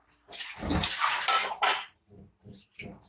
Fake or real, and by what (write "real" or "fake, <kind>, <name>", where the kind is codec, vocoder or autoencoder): real